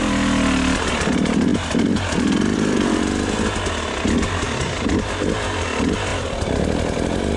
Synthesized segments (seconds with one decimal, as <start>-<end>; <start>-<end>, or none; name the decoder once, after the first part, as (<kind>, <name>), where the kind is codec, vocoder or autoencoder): 1.5-3.0 (vocoder, BigVGAN v2)